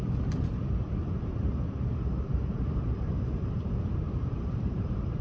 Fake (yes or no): yes